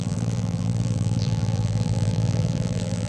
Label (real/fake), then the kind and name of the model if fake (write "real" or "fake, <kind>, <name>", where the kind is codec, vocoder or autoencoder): fake, vocoder, BigVGAN v2